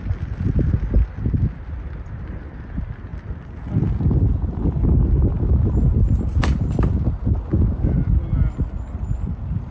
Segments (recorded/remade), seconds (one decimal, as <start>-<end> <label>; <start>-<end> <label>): 0.0-9.7 recorded